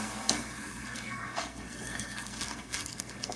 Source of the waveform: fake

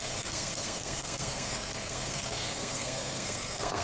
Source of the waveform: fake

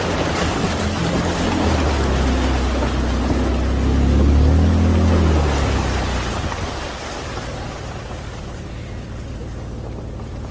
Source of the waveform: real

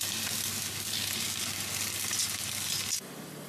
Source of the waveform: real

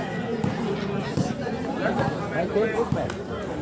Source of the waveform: real